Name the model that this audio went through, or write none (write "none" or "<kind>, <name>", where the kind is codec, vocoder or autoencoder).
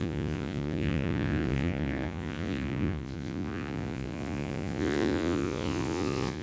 vocoder, Vocos